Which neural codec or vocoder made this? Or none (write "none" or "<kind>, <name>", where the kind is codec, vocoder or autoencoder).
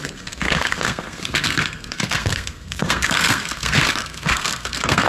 codec, SNAC